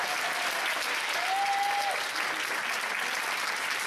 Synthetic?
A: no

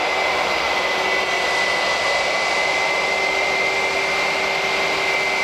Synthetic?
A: no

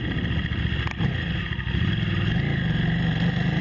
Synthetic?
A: no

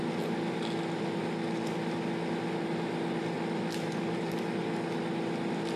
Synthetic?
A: no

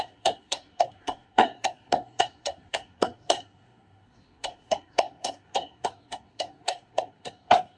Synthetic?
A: yes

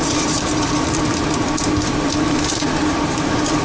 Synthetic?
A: no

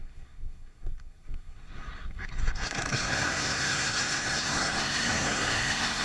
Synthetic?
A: yes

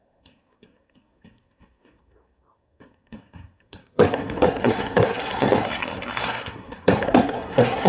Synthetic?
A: yes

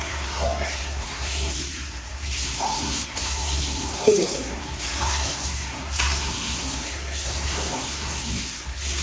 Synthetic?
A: yes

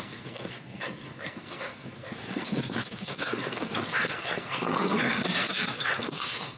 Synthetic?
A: yes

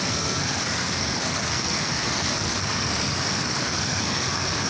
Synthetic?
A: yes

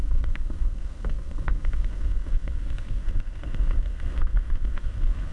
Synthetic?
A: yes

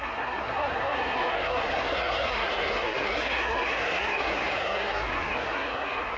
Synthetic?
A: yes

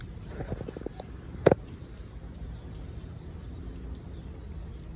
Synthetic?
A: no